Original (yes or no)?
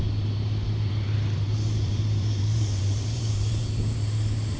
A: no